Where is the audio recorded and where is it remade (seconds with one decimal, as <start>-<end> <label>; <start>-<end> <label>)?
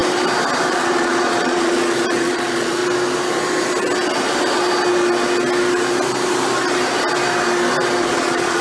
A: 0.0-0.7 recorded; 0.7-2.8 remade; 2.8-8.0 recorded; 8.0-8.6 remade